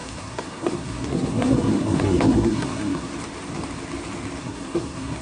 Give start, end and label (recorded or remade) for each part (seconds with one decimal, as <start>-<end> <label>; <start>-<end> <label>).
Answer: 0.0-3.1 remade; 3.1-4.4 recorded; 4.4-5.2 remade